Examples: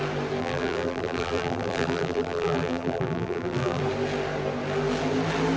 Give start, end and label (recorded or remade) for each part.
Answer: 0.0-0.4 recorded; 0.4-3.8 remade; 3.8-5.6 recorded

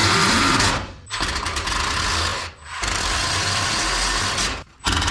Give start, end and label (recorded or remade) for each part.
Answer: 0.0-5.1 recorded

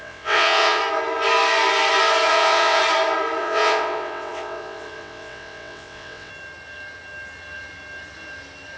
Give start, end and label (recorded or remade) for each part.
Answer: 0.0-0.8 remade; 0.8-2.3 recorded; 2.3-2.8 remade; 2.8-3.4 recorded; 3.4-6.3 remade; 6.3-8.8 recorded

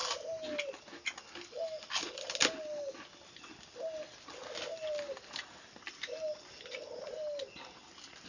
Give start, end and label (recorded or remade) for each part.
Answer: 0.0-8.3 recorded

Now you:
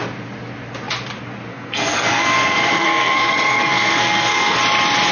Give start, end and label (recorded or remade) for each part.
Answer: 0.0-1.5 recorded; 1.5-4.6 remade; 4.6-5.1 recorded